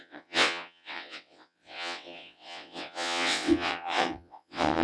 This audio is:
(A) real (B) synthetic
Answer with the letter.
B